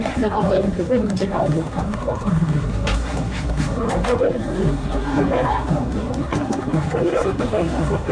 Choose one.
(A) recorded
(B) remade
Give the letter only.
B